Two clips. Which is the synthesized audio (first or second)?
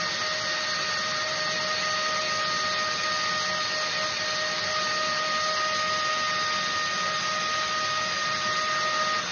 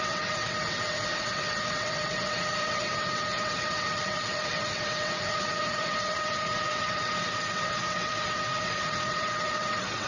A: second